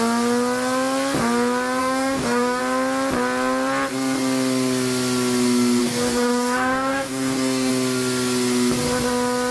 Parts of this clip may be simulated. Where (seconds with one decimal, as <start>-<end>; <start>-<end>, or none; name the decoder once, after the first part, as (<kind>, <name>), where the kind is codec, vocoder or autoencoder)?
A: 1.8-2.6 (codec, DAC); 5.8-7.7